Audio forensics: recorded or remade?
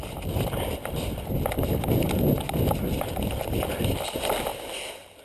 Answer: recorded